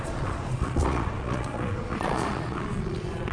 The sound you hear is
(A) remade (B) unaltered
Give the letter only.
A